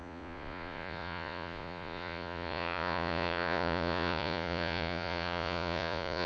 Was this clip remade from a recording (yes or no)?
yes